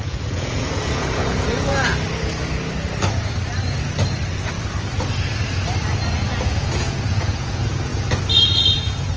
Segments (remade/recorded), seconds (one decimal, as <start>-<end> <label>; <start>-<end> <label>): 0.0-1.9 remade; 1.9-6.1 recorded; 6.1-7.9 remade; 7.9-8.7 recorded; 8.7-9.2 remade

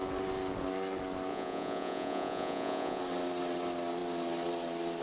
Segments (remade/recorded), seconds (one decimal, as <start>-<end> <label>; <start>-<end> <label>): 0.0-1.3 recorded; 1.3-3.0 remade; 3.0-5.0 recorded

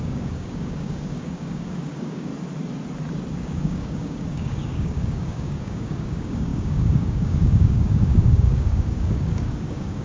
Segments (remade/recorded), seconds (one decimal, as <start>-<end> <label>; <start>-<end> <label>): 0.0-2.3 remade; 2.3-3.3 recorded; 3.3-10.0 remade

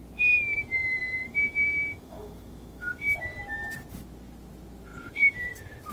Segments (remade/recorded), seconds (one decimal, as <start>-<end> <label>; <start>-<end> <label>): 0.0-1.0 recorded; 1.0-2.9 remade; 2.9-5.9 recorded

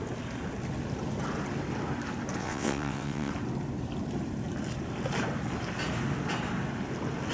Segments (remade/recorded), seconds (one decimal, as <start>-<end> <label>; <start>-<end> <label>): 0.0-2.4 recorded; 2.4-3.3 remade; 3.3-7.3 recorded

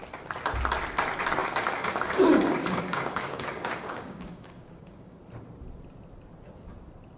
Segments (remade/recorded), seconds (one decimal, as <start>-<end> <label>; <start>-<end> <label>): 0.0-1.4 recorded; 1.4-5.2 remade; 5.2-7.2 recorded

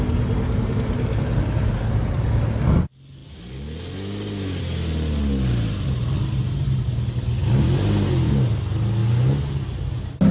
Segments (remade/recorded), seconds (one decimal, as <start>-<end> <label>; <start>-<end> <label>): 0.0-10.3 recorded

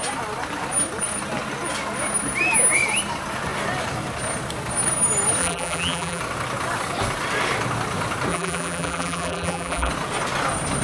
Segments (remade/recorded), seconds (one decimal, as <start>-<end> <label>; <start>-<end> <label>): 0.0-5.4 recorded; 5.4-6.2 remade; 6.2-8.3 recorded; 8.3-9.9 remade; 9.9-10.8 recorded